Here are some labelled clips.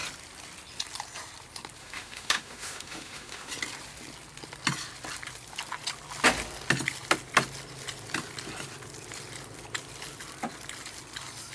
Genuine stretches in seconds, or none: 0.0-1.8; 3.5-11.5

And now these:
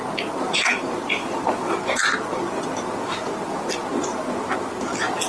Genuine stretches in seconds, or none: 0.0-5.3

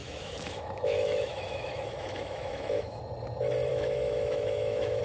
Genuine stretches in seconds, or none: 3.0-3.7

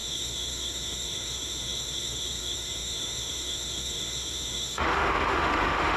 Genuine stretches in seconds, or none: none